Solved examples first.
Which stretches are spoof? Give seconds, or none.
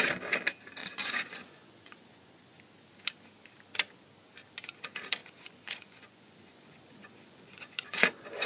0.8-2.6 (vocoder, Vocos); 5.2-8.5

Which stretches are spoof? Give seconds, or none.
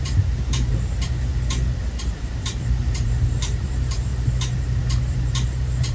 0.0-1.3 (vocoder, BigVGAN v2); 2.0-4.1; 5.0-5.9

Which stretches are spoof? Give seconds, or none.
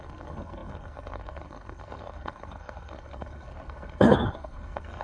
0.0-5.0 (codec, SNAC)